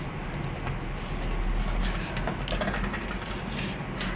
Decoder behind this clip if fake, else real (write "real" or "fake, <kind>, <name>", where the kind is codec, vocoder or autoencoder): real